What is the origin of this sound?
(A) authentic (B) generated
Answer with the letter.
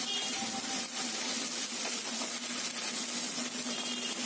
A